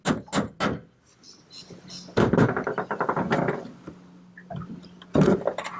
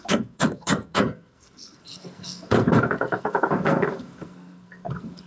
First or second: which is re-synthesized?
second